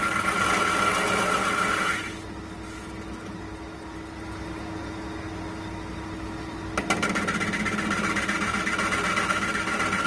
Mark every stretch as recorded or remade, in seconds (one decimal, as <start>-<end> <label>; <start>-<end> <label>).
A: 0.0-10.1 recorded